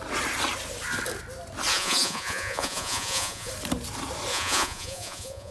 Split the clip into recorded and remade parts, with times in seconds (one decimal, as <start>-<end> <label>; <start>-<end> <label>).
0.0-1.7 recorded; 1.7-3.5 remade; 3.5-4.3 recorded; 4.3-5.5 remade